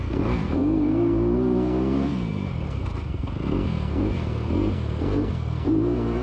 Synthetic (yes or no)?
yes